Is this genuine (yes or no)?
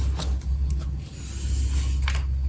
yes